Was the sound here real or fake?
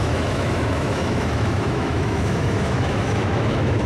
fake